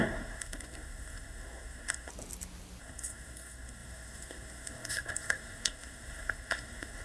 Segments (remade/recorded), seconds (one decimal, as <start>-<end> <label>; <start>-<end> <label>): 0.0-2.1 remade; 2.1-2.8 recorded; 2.8-7.0 remade